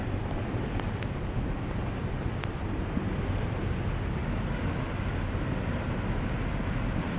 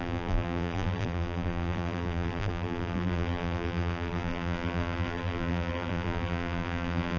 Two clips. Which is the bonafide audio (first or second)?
first